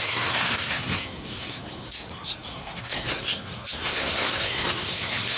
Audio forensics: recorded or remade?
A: remade